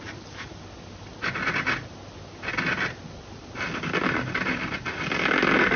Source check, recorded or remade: recorded